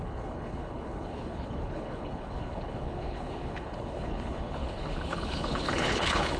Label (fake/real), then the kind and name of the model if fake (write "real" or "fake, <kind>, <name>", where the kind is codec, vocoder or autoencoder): fake, codec, HILCodec